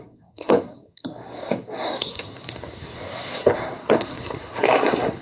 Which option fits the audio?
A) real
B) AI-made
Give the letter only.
B